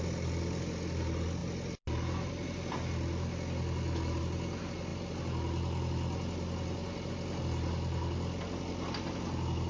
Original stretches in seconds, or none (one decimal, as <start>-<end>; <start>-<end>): 0.0-9.7